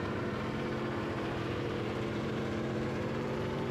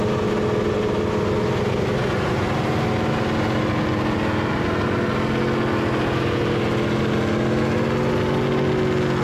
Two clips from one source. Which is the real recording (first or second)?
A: second